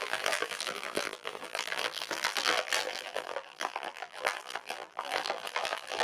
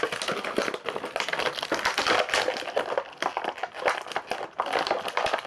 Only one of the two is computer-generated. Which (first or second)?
first